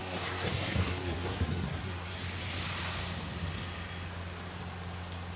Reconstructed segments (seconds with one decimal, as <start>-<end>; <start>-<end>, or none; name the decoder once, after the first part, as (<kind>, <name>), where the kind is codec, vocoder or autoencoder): 0.0-2.2 (codec, SNAC)